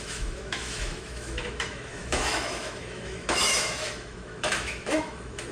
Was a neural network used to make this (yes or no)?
yes